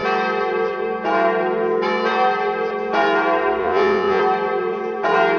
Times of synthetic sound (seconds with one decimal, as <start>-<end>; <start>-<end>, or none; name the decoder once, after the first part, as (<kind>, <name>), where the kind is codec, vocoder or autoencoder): 3.6-4.2 (vocoder, Vocos)